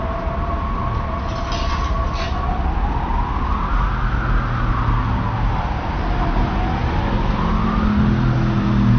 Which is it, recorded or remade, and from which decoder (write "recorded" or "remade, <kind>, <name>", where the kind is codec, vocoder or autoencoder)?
recorded